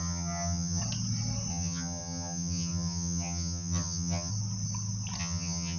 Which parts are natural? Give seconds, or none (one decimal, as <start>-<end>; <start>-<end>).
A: 0.8-1.5; 4.3-5.2